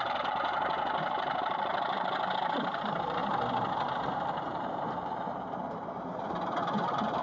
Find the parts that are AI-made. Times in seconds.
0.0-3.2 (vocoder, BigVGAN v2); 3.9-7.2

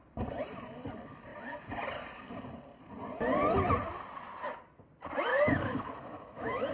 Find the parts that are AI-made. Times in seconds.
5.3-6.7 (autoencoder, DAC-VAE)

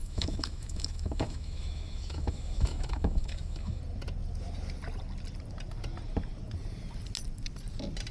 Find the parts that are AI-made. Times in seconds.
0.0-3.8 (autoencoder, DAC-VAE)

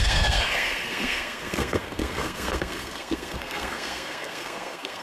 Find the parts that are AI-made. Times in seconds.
0.0-5.0 (codec, SNAC)